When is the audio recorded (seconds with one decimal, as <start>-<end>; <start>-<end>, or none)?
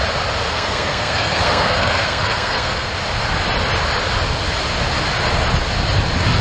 0.0-0.5; 2.9-6.4